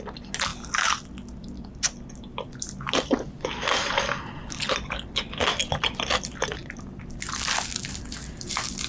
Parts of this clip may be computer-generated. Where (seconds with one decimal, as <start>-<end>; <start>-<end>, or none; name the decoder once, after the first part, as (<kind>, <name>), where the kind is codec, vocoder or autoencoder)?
none